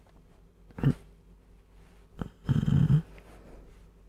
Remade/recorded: recorded